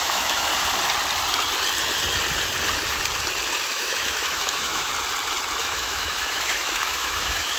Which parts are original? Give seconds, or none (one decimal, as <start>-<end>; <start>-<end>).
0.5-3.7; 4.9-5.6